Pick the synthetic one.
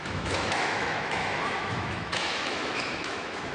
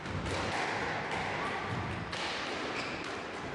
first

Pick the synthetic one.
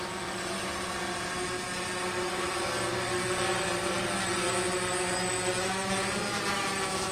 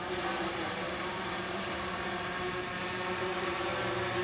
second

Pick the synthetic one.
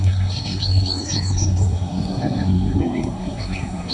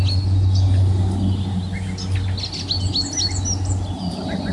first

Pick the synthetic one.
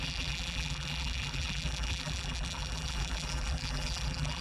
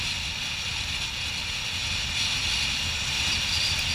first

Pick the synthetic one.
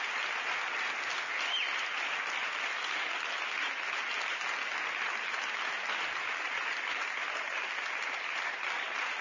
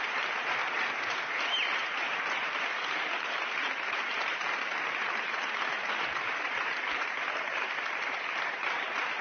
second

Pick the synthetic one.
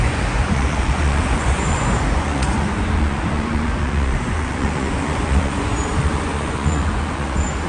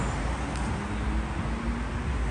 first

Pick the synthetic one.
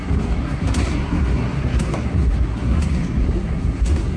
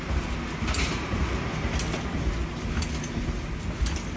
first